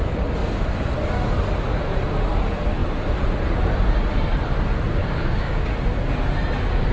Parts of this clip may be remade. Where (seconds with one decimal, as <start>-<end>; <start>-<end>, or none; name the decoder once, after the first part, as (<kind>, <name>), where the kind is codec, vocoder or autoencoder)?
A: 5.0-5.7 (codec, DAC)